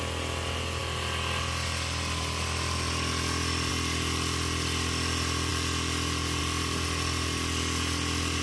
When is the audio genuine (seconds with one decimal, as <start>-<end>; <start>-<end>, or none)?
0.0-8.4